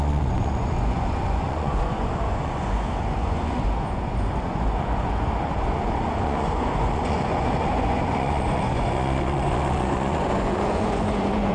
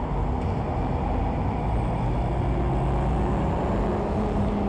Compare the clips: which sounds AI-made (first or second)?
first